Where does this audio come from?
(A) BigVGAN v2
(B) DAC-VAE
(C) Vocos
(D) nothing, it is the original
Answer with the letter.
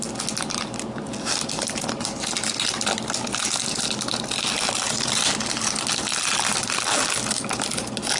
D